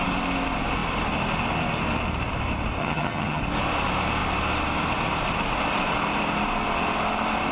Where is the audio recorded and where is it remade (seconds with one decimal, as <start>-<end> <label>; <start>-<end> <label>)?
0.0-2.8 recorded; 2.8-3.4 remade; 3.4-7.5 recorded